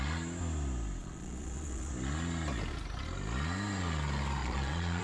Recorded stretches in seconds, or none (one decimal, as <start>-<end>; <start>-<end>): 0.0-1.0; 1.9-4.4